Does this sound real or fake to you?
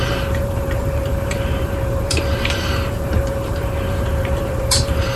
fake